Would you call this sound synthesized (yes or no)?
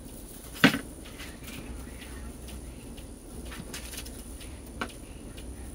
yes